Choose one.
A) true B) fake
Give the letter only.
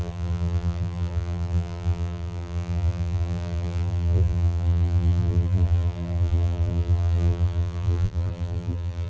B